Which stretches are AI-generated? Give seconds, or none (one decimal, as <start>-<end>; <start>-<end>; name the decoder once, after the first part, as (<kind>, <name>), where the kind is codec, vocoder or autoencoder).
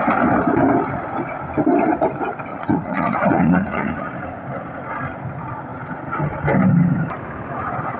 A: 2.5-4.1 (vocoder, Vocos)